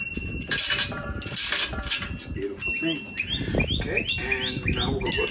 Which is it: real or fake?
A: real